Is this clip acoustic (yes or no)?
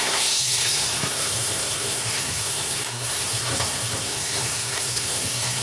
no